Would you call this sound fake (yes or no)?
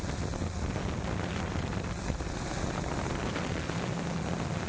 no